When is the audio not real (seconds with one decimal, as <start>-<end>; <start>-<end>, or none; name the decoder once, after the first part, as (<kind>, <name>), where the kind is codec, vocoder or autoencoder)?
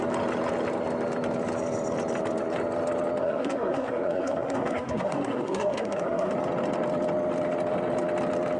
3.2-6.3 (codec, SNAC)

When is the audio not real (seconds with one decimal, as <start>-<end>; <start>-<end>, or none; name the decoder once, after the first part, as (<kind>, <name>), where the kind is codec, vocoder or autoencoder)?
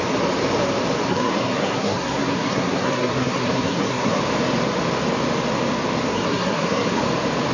1.1-4.2 (codec, SNAC); 6.1-7.0